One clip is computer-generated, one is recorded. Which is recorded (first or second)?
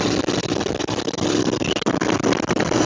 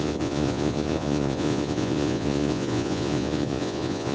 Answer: first